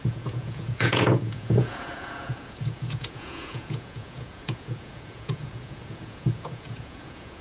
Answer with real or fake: fake